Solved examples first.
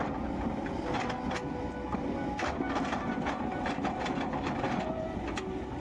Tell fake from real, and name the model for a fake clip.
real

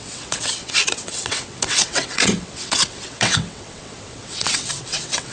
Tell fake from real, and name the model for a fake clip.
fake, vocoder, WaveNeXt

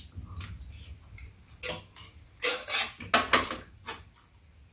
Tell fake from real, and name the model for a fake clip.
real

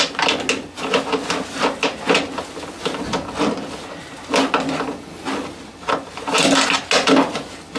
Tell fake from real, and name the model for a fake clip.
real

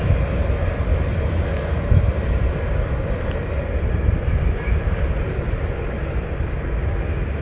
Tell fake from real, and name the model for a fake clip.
real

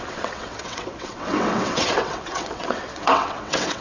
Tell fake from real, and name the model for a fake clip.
fake, vocoder, WaveNeXt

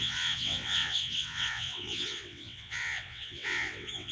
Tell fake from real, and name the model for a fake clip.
fake, vocoder, WaveNeXt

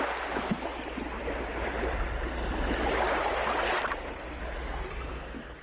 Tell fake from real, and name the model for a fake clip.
real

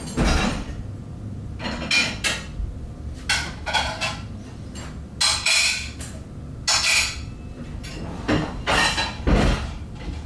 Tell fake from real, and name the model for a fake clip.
real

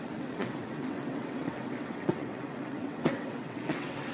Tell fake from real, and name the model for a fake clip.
fake, vocoder, WaveNeXt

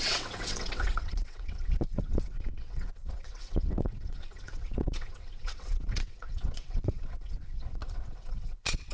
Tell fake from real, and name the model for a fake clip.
fake, vocoder, WaveNeXt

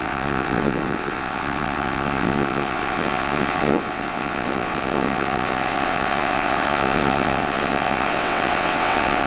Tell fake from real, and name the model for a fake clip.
fake, vocoder, WaveNeXt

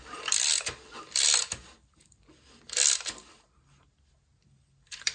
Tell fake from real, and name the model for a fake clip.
real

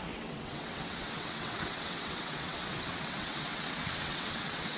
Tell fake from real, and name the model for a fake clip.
fake, vocoder, WaveNeXt